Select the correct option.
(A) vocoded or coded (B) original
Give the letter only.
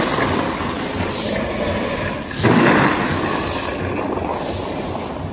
B